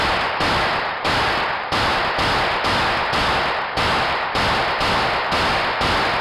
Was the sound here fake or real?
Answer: real